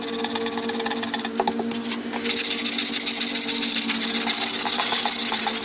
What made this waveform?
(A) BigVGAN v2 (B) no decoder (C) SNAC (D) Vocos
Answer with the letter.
B